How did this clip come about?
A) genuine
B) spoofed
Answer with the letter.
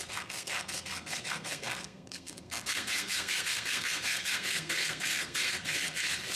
B